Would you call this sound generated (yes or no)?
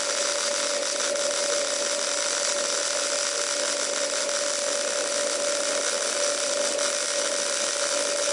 no